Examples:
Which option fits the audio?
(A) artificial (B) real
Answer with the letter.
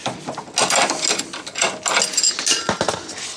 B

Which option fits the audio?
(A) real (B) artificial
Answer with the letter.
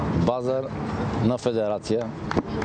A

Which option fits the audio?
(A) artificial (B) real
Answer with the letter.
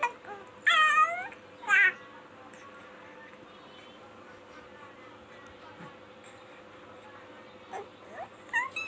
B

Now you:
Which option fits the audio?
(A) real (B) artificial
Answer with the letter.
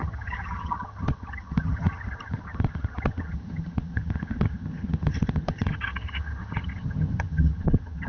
B